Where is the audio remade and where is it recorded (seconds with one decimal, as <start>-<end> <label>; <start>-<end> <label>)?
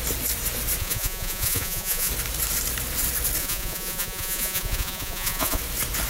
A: 0.0-0.8 recorded; 0.8-2.1 remade; 2.1-3.4 recorded; 3.4-5.6 remade; 5.6-6.1 recorded